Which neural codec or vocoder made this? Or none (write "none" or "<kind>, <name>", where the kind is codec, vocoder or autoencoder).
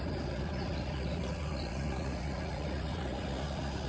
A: vocoder, Vocos